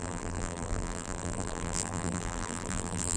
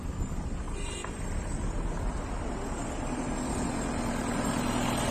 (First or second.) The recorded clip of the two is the second